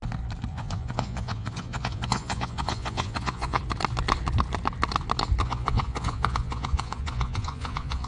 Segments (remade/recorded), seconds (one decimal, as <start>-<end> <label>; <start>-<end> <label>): 0.0-0.5 recorded; 0.5-3.6 remade; 3.6-5.4 recorded; 5.4-8.1 remade